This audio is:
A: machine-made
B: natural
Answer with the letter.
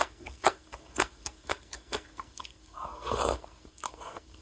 A